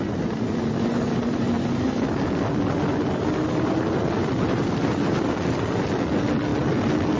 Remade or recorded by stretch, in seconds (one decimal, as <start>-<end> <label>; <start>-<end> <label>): 0.0-7.2 recorded